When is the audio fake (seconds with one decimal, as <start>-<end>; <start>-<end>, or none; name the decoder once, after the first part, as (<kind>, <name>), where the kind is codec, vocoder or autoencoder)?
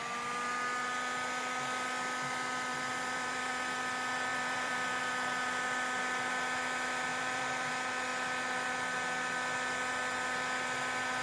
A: 2.7-3.5 (vocoder, BigVGAN v2); 4.3-5.0; 7.1-7.7